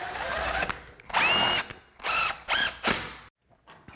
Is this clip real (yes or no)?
yes